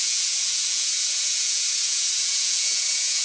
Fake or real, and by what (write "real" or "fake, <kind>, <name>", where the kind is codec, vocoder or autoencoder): fake, vocoder, Vocos